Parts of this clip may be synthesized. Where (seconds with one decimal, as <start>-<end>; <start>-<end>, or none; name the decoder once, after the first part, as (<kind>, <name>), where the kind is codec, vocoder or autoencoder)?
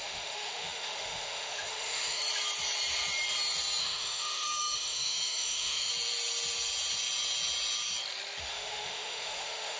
0.0-2.2 (autoencoder, DAC-VAE); 3.8-5.9; 8.4-9.8